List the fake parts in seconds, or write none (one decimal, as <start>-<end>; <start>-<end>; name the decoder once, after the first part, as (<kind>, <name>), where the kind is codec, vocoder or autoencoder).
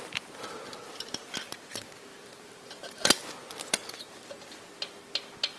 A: 2.1-3.2 (vocoder, BigVGAN v2)